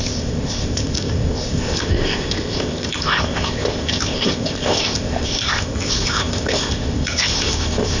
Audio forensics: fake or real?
fake